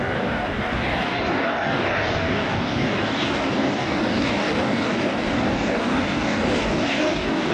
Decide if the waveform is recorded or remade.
remade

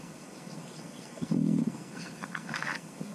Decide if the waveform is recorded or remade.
remade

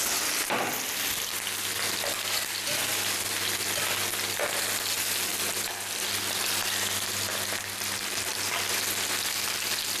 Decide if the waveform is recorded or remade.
recorded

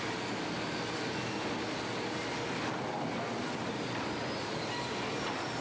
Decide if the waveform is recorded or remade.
recorded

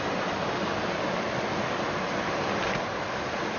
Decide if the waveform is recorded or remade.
recorded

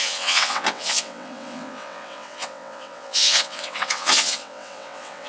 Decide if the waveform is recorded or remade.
remade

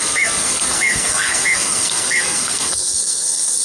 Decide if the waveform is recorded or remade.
remade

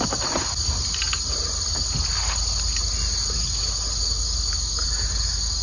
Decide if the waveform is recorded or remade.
recorded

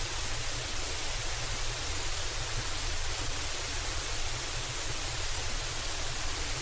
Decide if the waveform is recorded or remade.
remade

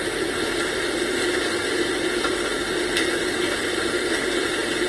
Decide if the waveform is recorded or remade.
recorded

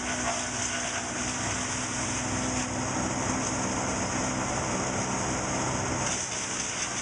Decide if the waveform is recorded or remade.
recorded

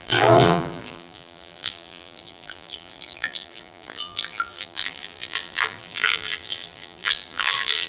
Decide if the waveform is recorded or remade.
remade